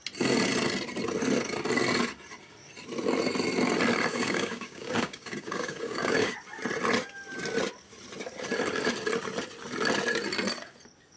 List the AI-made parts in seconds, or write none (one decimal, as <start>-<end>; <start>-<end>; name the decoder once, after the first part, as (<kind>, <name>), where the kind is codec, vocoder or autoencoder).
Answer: 4.1-6.3 (codec, DAC)